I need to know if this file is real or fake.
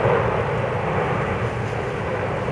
fake